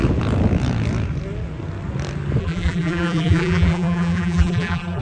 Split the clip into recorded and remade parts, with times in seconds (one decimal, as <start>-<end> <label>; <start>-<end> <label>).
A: 0.0-2.4 recorded; 2.4-5.0 remade